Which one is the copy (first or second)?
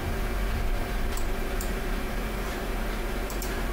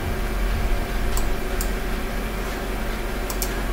first